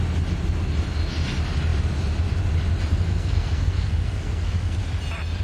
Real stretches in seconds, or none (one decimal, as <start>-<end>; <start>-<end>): 0.0-2.9; 4.8-5.4